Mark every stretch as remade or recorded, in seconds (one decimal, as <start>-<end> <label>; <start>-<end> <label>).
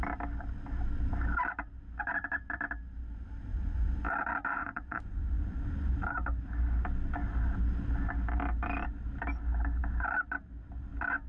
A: 0.0-3.5 recorded; 3.5-4.0 remade; 4.0-4.5 recorded; 4.5-5.9 remade; 5.9-11.3 recorded